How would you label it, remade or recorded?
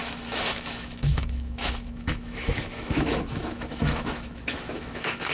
remade